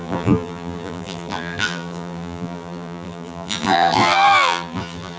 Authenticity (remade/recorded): remade